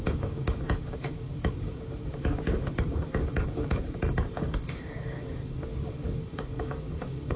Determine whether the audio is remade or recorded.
remade